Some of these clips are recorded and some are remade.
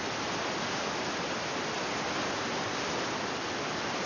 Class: recorded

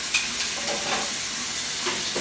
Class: recorded